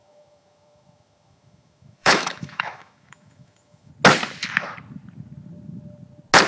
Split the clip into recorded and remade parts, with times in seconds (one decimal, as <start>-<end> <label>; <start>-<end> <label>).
0.0-3.9 remade; 3.9-6.5 recorded